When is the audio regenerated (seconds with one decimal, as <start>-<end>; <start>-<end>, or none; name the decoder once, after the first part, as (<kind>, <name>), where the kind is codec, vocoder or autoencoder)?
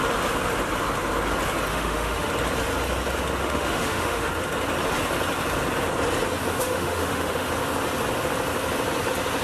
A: 1.7-2.3 (autoencoder, DAC-VAE); 3.4-4.3; 6.5-7.5